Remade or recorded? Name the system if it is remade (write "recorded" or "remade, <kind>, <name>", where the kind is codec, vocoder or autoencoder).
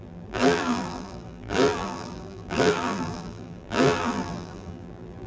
remade, vocoder, BigVGAN v2